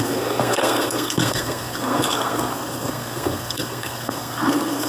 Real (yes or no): no